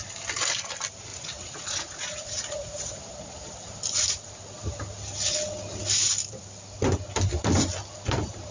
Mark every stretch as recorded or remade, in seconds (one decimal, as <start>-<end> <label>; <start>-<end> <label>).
0.0-1.1 recorded; 1.1-3.0 remade; 3.0-8.5 recorded

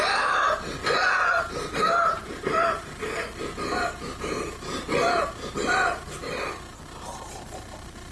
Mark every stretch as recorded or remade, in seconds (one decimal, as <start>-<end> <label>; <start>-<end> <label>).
0.0-0.8 recorded; 0.8-1.4 remade; 1.4-8.1 recorded

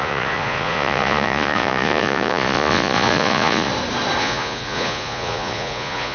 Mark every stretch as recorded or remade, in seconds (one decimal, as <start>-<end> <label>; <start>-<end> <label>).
0.0-3.7 remade; 3.7-4.2 recorded; 4.2-6.1 remade

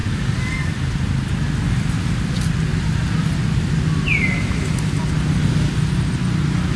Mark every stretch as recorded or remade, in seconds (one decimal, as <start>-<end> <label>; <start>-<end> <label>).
0.0-6.8 recorded

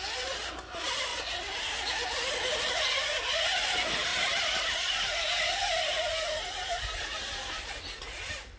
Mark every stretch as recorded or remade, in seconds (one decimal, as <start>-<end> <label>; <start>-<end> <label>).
0.0-8.6 recorded